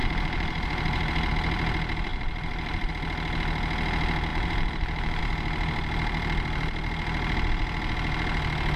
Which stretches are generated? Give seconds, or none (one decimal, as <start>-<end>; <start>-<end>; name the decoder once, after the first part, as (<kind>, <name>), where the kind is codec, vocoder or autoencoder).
0.0-1.3 (vocoder, BigVGAN v2); 2.1-2.9; 4.3-5.2